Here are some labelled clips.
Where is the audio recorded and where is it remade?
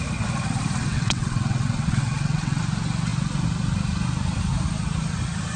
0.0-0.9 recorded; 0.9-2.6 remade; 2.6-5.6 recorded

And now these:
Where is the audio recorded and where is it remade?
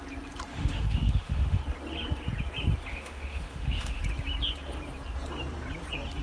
0.0-0.5 recorded; 0.5-1.6 remade; 1.6-2.9 recorded; 2.9-4.0 remade; 4.0-6.2 recorded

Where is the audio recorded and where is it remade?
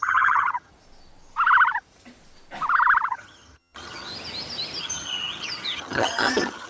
0.0-0.7 remade; 0.7-3.1 recorded; 3.1-4.1 remade; 4.1-4.8 recorded; 4.8-6.7 remade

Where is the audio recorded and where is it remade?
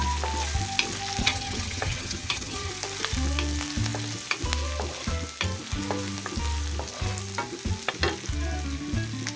0.0-1.2 recorded; 1.2-2.7 remade; 2.7-9.4 recorded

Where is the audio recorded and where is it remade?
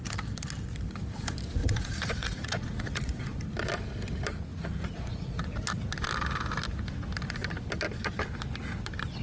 0.0-1.6 recorded; 1.6-3.4 remade; 3.4-4.5 recorded; 4.5-5.5 remade; 5.5-9.2 recorded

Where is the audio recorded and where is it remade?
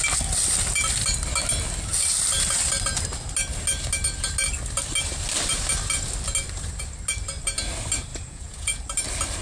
0.0-8.1 recorded; 8.1-8.8 remade; 8.8-9.4 recorded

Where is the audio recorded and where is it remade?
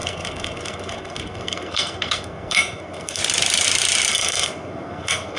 0.0-3.2 remade; 3.2-4.1 recorded; 4.1-5.4 remade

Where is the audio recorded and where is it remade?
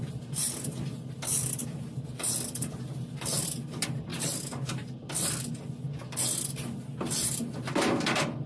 0.0-8.5 recorded